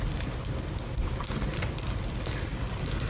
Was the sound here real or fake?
real